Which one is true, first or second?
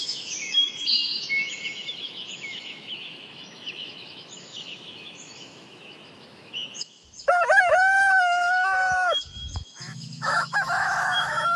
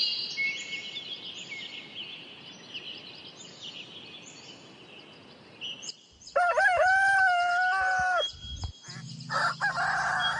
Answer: second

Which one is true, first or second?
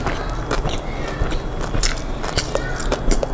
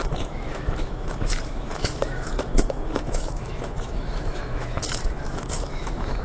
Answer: first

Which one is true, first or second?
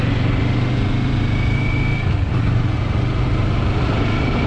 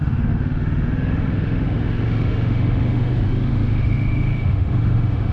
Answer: first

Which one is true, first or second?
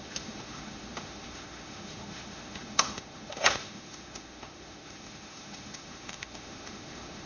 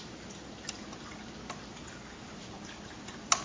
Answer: second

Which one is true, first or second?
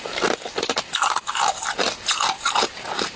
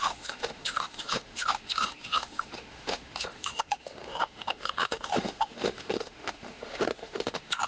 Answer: first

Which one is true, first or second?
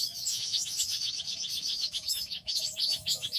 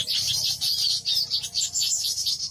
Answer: second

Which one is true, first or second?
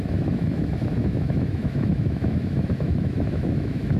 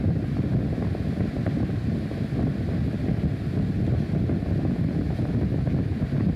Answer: second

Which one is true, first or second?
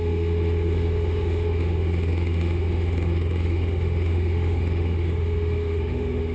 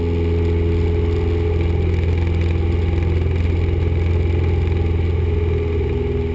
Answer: second